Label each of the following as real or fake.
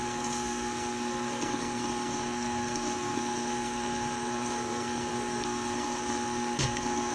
fake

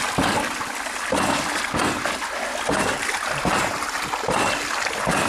real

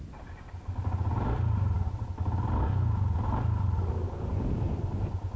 real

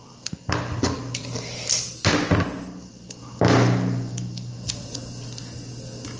real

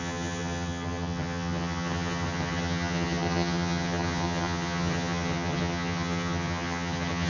fake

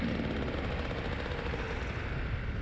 real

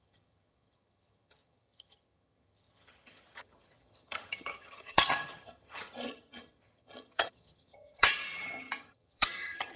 fake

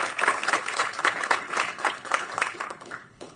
fake